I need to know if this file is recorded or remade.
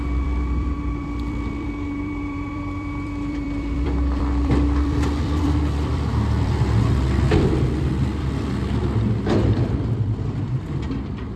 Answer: remade